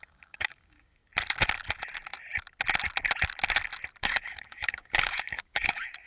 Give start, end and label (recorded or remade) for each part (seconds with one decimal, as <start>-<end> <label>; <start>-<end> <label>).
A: 0.0-1.0 remade; 1.0-4.0 recorded; 4.0-6.1 remade